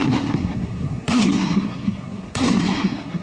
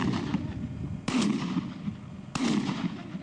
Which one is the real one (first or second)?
second